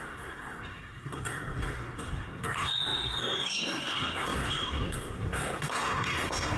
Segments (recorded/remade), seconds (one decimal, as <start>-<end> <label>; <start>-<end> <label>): 0.0-6.6 remade